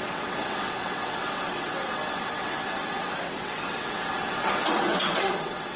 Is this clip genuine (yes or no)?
no